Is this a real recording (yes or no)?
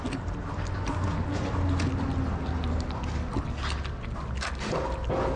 yes